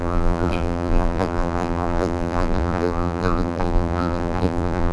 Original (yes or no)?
no